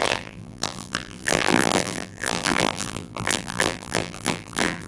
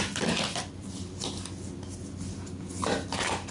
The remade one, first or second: first